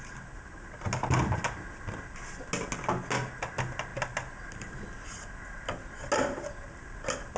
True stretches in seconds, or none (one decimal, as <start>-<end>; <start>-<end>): 0.0-7.4